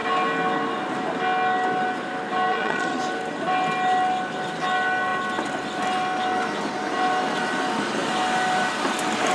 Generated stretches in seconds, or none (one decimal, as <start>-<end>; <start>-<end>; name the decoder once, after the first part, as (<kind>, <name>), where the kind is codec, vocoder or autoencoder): 2.5-3.0 (vocoder, Vocos)